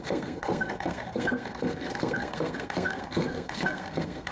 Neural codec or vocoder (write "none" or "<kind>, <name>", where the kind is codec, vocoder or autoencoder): codec, SNAC